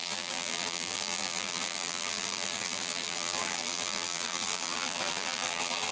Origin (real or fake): fake